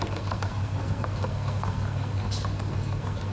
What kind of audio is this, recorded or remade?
remade